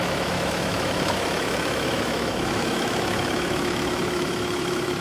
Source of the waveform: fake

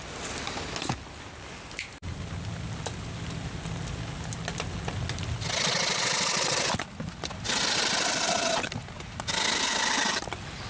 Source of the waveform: real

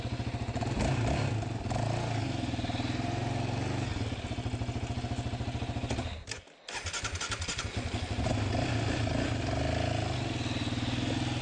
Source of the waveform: real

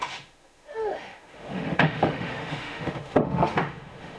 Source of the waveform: fake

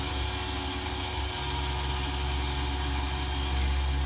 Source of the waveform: real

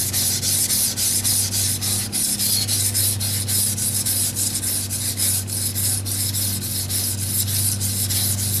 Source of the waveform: real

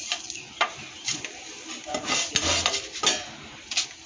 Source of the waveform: real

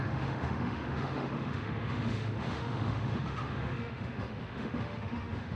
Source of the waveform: fake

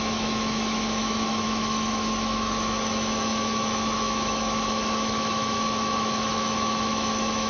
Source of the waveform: fake